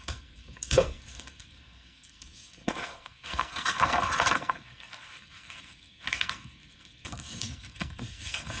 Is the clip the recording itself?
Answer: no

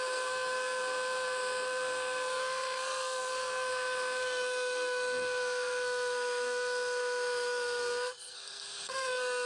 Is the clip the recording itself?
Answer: no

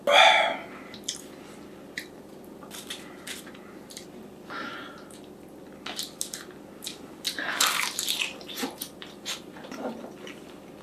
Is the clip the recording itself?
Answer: yes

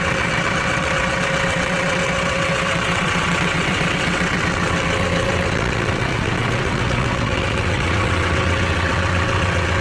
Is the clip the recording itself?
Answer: no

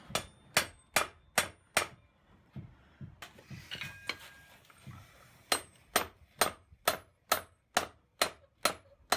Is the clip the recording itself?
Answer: yes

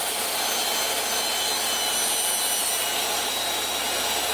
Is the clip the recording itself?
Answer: yes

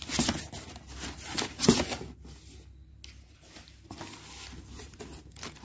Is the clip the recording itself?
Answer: yes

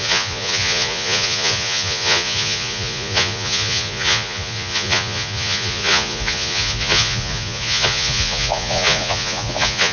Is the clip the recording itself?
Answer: no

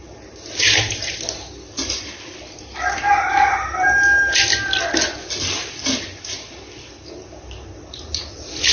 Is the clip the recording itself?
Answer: yes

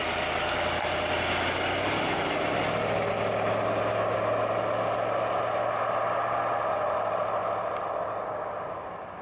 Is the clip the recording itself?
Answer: yes